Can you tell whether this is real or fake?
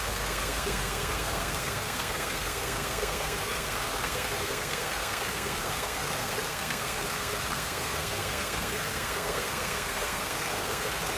fake